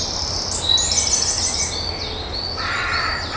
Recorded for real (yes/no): yes